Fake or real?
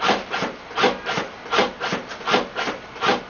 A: real